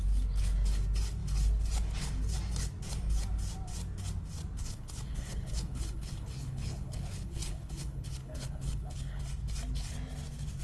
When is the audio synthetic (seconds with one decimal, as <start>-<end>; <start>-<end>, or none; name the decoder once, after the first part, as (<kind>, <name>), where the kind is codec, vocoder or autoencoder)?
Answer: 4.6-9.2 (codec, HILCodec)